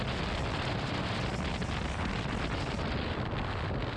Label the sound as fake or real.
real